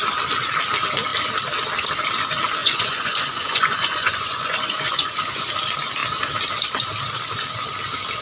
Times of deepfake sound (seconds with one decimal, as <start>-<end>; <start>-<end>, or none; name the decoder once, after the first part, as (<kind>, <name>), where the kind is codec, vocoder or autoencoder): 2.6-5.5 (vocoder, Vocos)